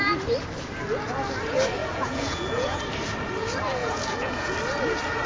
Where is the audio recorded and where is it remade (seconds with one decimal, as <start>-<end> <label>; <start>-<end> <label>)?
0.0-1.8 recorded; 1.8-2.8 remade; 2.8-3.8 recorded; 3.8-4.5 remade; 4.5-5.3 recorded